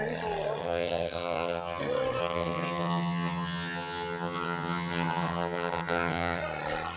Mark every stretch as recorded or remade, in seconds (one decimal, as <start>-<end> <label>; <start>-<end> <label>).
0.0-0.6 recorded; 0.6-1.8 remade; 1.8-2.2 recorded; 2.2-6.4 remade; 6.4-7.0 recorded